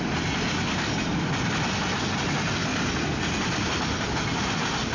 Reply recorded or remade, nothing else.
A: recorded